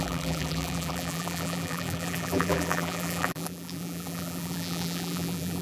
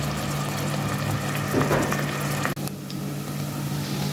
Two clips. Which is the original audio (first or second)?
second